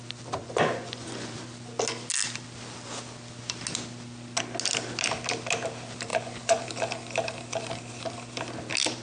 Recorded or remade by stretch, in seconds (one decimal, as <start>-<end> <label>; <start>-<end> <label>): 0.0-0.4 recorded; 0.4-1.3 remade; 1.3-6.1 recorded; 6.1-6.6 remade; 6.6-9.0 recorded